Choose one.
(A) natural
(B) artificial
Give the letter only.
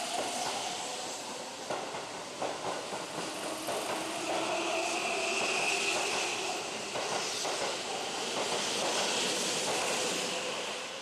A